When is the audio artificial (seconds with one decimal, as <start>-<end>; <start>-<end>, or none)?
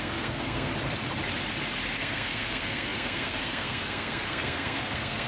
0.0-0.7; 2.0-5.3